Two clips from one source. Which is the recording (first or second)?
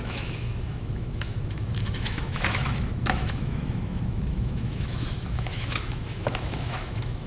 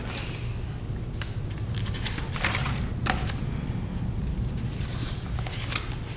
second